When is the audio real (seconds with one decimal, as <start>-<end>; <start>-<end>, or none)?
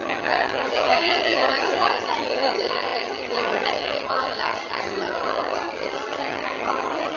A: none